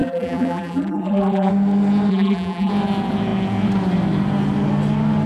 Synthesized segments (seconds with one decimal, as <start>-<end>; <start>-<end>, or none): 0.0-1.5; 2.1-2.7